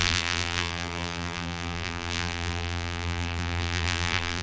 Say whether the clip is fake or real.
fake